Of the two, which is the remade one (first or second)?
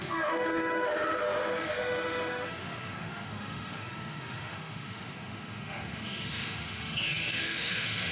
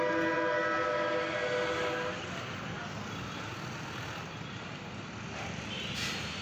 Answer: first